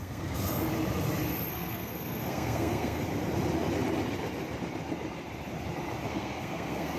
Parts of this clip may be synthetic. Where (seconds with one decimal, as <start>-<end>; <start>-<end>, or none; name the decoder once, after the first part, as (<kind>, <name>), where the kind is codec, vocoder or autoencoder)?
0.0-0.7 (codec, SNAC); 1.5-3.0; 6.1-7.0